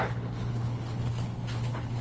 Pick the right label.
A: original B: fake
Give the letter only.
B